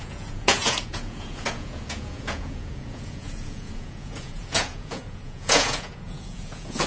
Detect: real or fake fake